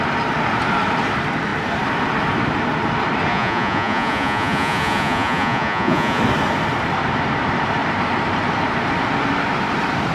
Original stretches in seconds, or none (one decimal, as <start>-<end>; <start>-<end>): 0.0-3.3; 6.2-10.1